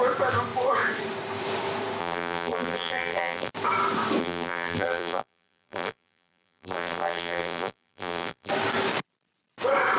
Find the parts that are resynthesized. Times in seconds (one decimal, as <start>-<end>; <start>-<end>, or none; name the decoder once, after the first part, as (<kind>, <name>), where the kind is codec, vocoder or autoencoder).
2.0-3.5 (vocoder, BigVGAN v2); 4.2-8.5